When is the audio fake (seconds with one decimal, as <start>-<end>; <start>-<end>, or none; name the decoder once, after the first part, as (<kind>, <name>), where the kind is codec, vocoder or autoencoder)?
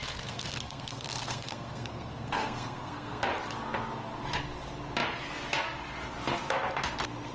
0.0-3.2 (codec, SNAC)